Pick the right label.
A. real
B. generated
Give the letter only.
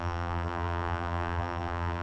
B